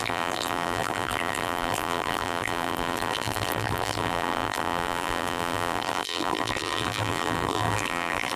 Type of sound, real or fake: fake